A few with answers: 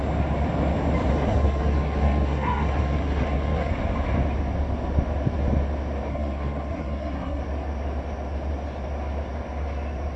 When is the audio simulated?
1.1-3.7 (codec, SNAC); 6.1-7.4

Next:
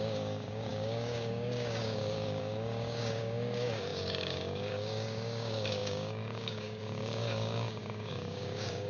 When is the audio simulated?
0.0-8.9 (codec, DAC)

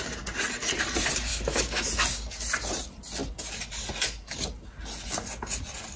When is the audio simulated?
1.3-1.9 (autoencoder, DAC-VAE)

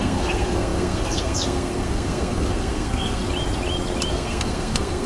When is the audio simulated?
0.0-3.2 (codec, SNAC); 4.1-5.1

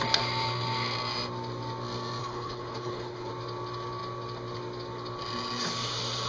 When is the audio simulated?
2.2-3.3 (codec, HILCodec)